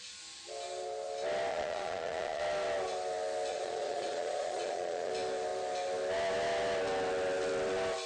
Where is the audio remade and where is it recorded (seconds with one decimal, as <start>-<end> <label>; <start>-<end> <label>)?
0.0-1.5 recorded; 1.5-2.4 remade; 2.4-3.5 recorded; 3.5-5.1 remade; 5.1-8.1 recorded